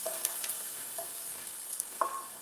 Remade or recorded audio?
remade